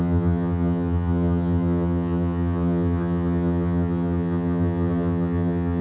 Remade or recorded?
remade